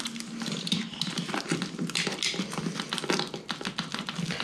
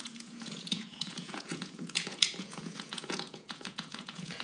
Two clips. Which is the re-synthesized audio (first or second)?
second